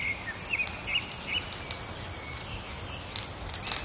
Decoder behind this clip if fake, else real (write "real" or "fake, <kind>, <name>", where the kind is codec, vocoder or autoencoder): real